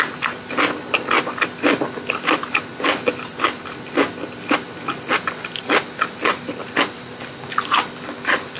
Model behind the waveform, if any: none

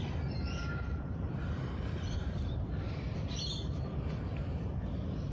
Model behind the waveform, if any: vocoder, BigVGAN v2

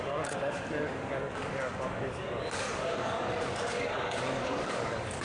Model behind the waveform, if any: codec, DAC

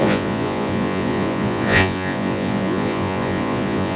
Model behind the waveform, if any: vocoder, Vocos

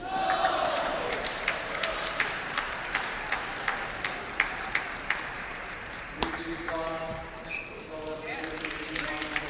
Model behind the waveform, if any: vocoder, BigVGAN v2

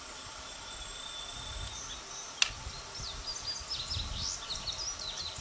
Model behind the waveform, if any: none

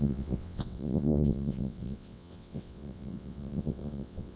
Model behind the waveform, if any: vocoder, WaveNeXt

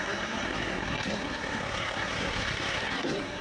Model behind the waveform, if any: codec, SNAC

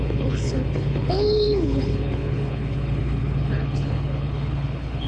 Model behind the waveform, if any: codec, HILCodec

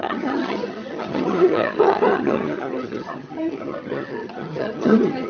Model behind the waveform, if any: vocoder, HiFi-GAN